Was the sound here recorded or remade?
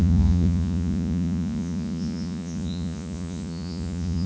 remade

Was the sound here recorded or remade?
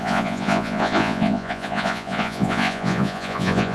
remade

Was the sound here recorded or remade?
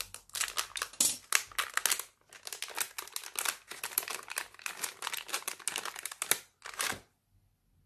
recorded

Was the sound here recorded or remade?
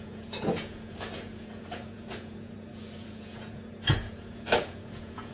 remade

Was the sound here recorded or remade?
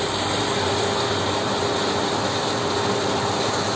recorded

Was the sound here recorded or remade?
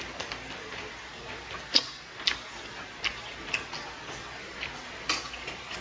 recorded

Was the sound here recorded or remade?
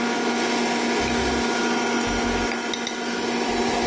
recorded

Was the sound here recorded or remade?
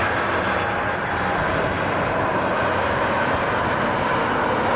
recorded